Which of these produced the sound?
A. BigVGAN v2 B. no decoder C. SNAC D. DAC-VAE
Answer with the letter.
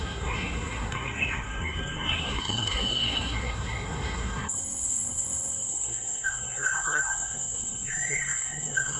C